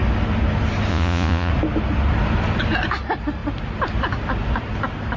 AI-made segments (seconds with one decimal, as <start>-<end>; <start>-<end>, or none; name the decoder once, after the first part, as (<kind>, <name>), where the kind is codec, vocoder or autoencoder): 0.9-1.5 (vocoder, Vocos)